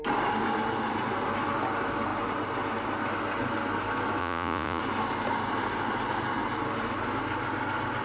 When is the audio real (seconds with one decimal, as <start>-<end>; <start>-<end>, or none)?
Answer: 0.0-4.2; 4.8-8.0